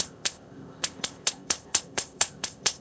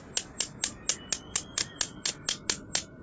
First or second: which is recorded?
second